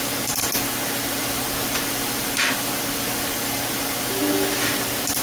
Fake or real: fake